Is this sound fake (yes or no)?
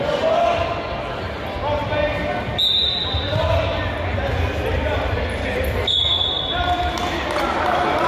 no